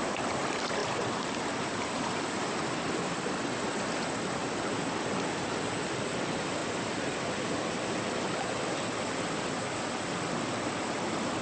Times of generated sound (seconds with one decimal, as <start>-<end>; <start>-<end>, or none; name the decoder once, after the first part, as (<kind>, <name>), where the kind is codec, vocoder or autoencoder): 0.8-2.4 (vocoder, BigVGAN v2); 4.4-4.9